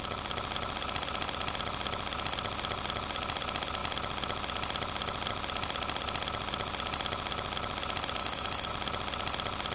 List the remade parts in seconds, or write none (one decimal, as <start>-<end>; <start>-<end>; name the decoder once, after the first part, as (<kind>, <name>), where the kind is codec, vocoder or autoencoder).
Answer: 8.2-8.7 (autoencoder, DAC-VAE)